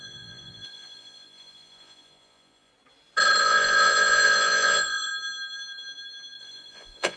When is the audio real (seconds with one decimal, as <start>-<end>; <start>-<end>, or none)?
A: 2.7-3.4; 5.1-6.4